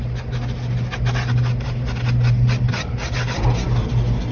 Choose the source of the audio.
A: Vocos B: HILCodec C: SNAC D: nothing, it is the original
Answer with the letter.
D